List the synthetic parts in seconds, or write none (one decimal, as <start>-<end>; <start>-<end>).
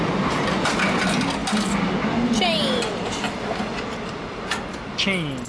none